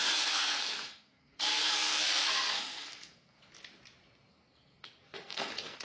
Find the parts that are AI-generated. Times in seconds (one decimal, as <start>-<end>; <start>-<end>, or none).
0.0-3.5; 4.3-5.8